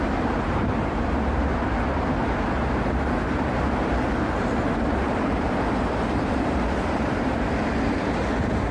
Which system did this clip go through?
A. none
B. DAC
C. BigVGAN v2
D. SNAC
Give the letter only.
C